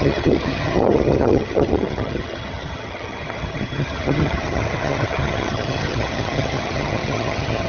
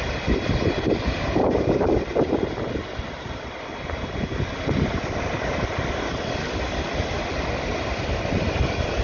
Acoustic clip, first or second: second